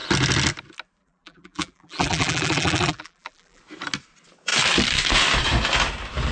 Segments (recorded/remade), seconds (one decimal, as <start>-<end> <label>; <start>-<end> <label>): 0.0-1.0 recorded; 1.0-3.6 remade; 3.6-6.3 recorded